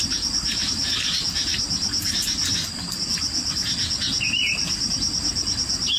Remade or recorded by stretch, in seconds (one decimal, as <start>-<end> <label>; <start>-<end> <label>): 0.0-6.0 recorded